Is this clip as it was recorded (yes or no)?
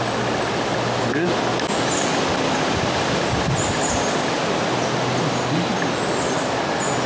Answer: yes